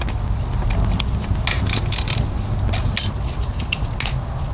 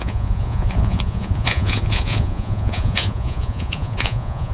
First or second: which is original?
first